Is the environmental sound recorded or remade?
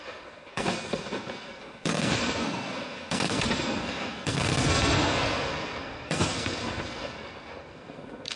remade